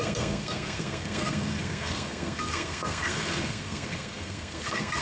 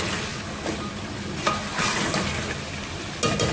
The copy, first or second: first